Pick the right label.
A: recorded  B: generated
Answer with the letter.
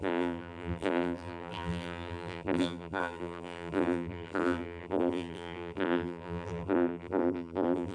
B